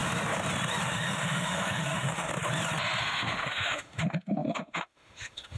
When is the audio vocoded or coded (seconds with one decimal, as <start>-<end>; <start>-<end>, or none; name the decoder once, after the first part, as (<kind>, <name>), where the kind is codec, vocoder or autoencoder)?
0.9-2.3 (autoencoder, DAC-VAE); 3.0-5.6